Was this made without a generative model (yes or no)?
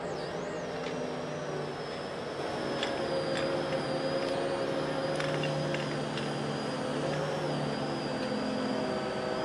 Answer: yes